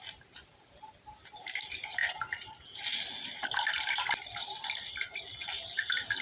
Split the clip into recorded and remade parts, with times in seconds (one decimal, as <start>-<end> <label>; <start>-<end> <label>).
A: 0.0-6.2 recorded